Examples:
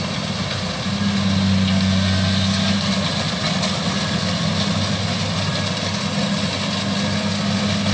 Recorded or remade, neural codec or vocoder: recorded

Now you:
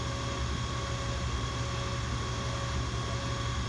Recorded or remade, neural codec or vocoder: recorded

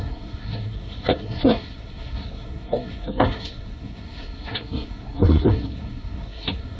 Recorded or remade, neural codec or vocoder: remade, codec, SNAC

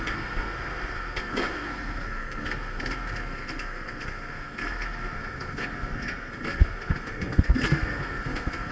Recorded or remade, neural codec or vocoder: remade, codec, SNAC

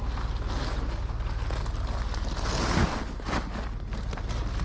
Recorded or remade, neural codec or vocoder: recorded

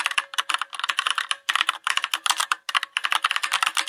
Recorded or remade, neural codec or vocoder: recorded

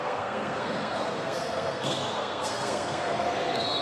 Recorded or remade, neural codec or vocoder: remade, codec, SNAC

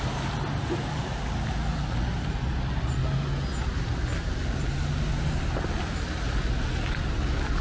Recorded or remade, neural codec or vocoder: recorded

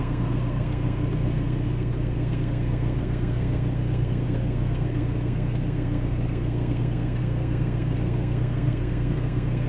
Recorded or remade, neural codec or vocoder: remade, codec, SNAC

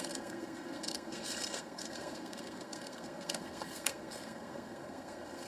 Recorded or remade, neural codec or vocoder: remade, codec, SNAC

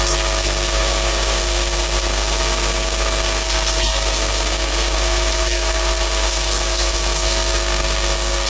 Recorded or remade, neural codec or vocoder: remade, codec, SNAC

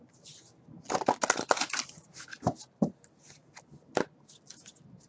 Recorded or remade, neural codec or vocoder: recorded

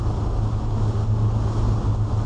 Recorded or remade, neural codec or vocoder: recorded